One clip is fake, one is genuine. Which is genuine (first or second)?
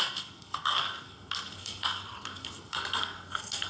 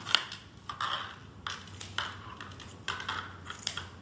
second